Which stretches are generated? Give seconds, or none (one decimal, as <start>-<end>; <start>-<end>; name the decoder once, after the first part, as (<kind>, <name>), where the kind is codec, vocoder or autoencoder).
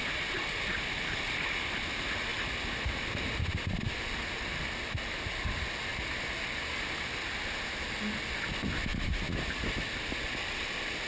none